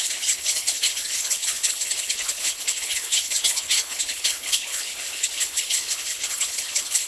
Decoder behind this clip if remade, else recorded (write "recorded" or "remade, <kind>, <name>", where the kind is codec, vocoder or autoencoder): remade, codec, HILCodec